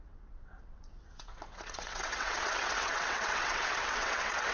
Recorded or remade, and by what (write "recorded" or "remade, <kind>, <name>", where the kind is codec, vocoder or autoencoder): remade, vocoder, WaveNeXt